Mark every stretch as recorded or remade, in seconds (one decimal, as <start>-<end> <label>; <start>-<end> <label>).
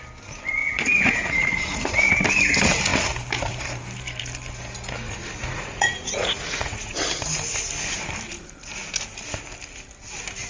0.0-0.6 recorded; 0.6-2.0 remade; 2.0-5.4 recorded; 5.4-7.0 remade; 7.0-10.5 recorded